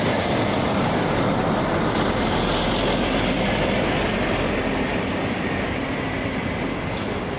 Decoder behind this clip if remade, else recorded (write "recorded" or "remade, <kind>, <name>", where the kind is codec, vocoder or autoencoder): recorded